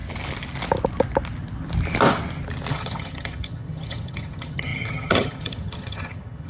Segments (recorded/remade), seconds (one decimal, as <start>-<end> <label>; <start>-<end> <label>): 0.0-2.7 recorded; 2.7-6.5 remade